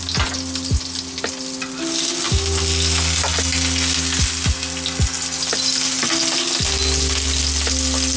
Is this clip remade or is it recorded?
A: recorded